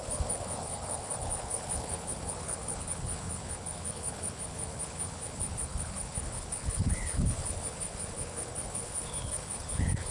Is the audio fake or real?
fake